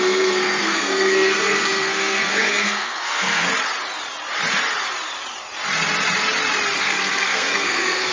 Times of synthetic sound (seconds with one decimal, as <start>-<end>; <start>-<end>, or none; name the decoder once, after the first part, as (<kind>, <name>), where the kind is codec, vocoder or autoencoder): 0.0-3.5 (codec, SNAC); 6.8-8.1